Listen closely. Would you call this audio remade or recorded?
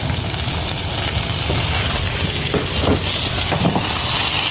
recorded